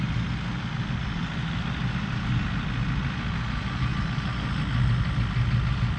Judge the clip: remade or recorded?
recorded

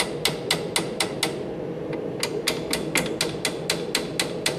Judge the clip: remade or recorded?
recorded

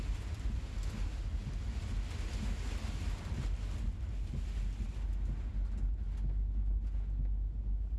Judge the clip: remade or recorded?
recorded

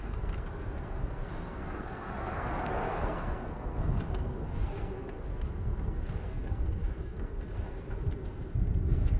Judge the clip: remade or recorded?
remade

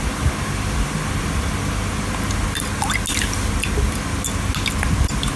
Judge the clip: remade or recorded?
recorded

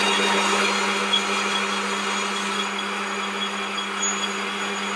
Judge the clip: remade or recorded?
recorded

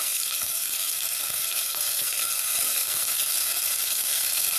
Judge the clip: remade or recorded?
remade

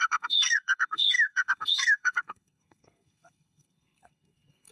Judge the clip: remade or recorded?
remade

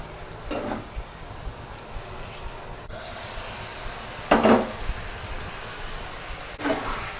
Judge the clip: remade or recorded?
recorded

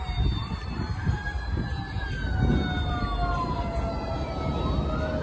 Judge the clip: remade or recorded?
recorded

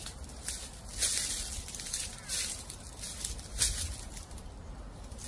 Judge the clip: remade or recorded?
recorded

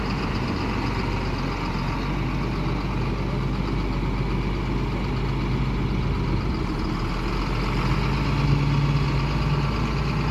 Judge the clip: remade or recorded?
recorded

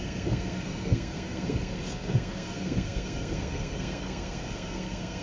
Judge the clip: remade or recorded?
remade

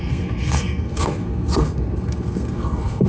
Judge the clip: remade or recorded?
remade